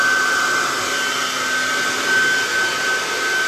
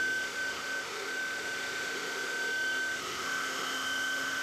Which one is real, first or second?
first